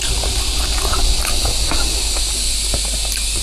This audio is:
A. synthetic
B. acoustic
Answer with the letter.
B